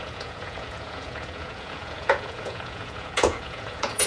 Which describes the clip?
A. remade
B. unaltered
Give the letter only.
A